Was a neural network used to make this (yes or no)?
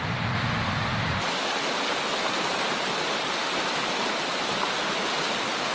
no